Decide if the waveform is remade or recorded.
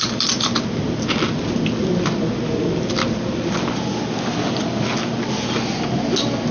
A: recorded